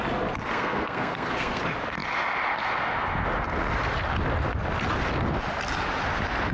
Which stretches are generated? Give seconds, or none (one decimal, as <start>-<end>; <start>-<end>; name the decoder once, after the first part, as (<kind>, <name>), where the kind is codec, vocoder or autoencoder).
0.5-1.6 (codec, SNAC)